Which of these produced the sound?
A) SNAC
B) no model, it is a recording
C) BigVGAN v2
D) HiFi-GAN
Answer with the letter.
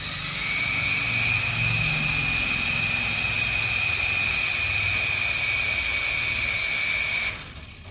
B